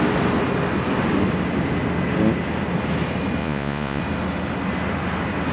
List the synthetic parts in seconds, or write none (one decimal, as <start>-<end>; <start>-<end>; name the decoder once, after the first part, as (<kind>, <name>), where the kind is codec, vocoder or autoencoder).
3.4-4.0 (vocoder, Vocos)